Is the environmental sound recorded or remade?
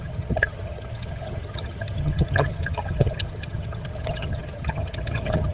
remade